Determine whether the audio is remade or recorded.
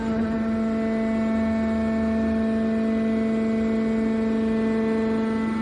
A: recorded